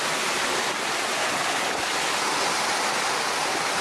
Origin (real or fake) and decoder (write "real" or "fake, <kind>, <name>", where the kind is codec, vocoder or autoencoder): real